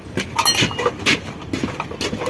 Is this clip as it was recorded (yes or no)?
yes